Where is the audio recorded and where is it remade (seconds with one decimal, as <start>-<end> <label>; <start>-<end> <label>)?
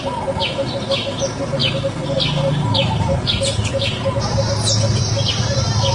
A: 0.0-1.6 recorded; 1.6-2.2 remade; 2.2-5.9 recorded